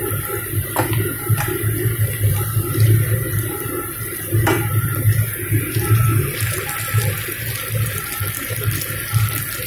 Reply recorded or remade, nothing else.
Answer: recorded